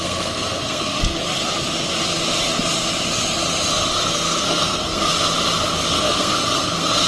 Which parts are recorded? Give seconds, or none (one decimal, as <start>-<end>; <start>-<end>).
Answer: 1.2-4.1; 5.1-5.9